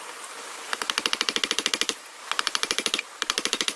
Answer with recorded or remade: recorded